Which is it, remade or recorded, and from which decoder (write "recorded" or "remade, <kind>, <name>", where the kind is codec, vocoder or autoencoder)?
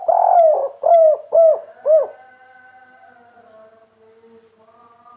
recorded